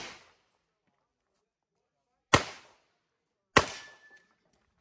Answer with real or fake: real